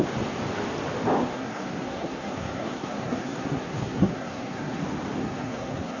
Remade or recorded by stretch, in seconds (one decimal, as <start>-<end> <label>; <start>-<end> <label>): 0.0-1.2 recorded; 1.2-4.8 remade; 4.8-5.2 recorded; 5.2-6.0 remade